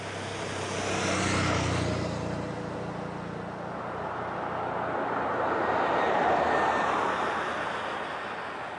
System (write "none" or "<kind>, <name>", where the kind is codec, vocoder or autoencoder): none